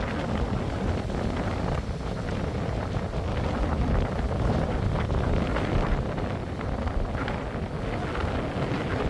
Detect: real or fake real